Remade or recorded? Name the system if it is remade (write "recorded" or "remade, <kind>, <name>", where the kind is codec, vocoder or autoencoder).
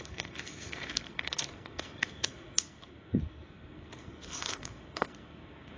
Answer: remade, codec, SNAC